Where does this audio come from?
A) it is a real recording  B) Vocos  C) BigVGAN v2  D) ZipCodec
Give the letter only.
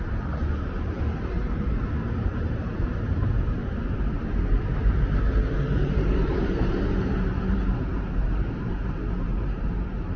C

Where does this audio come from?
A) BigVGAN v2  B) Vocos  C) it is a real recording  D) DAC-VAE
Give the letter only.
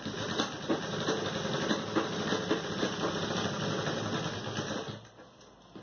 C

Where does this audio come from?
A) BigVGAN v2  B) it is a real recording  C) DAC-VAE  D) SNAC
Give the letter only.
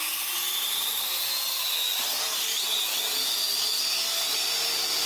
B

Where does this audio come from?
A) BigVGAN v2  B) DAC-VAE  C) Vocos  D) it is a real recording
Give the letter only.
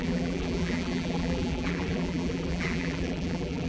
A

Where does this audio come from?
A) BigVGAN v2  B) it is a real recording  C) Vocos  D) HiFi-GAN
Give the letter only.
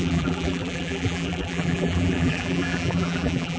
A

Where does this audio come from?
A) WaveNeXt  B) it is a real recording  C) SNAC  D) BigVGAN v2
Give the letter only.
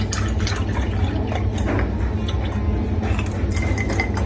B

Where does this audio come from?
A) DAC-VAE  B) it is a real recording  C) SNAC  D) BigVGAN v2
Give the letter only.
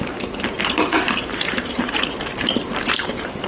D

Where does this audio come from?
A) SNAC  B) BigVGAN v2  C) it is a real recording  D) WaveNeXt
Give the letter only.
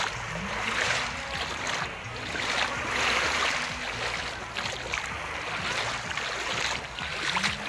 C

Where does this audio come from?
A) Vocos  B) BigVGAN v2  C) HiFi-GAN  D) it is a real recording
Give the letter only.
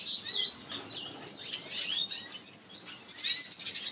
D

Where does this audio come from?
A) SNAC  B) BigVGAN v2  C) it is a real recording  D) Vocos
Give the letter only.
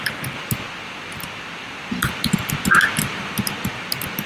C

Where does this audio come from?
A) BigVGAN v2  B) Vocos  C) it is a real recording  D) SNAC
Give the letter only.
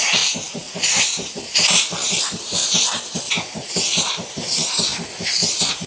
A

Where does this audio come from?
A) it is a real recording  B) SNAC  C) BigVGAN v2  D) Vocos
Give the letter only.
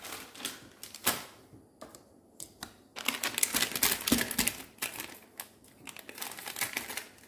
A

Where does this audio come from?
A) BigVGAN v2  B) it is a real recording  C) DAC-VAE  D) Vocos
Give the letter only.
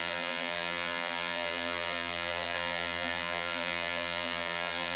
A